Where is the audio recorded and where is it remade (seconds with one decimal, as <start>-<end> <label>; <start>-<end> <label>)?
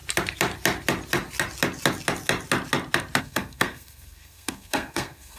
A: 0.0-3.2 recorded; 3.2-5.4 remade